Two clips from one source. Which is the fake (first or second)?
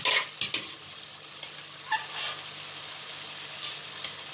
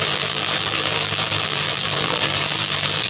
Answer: second